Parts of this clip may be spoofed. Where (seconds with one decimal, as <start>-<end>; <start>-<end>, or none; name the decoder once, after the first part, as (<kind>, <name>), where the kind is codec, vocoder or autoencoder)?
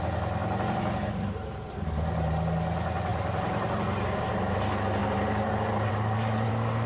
0.4-1.1 (vocoder, BigVGAN v2); 3.1-4.6; 5.0-6.5